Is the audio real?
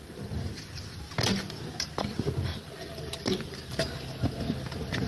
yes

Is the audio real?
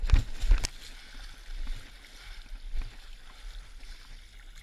yes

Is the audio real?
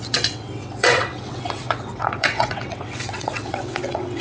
no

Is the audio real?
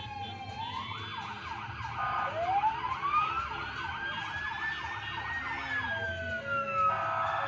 yes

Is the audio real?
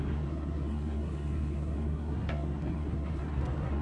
no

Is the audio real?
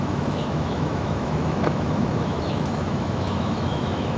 no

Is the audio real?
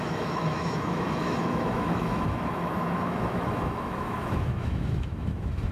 no